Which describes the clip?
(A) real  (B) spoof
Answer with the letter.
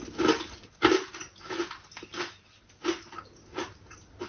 A